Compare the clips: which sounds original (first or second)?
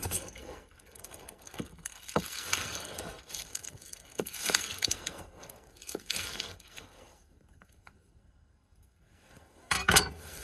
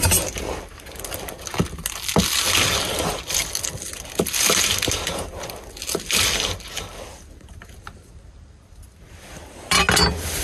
second